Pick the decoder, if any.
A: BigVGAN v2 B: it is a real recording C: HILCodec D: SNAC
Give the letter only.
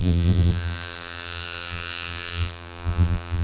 A